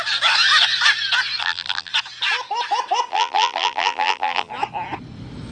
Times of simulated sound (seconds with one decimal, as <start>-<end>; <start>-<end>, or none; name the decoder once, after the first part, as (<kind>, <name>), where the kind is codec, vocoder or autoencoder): 1.4-1.9 (vocoder, BigVGAN v2); 3.1-4.5